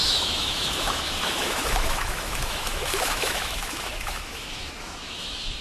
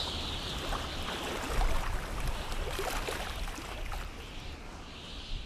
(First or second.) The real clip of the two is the second